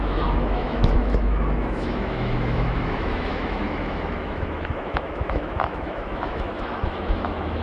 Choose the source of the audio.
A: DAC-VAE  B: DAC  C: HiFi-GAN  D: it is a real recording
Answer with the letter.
A